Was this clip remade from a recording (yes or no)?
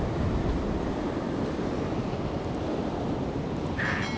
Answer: no